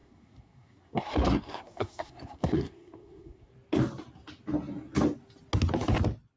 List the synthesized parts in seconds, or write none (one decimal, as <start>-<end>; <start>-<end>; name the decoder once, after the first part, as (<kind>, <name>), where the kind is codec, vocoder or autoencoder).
0.0-3.5 (codec, SNAC)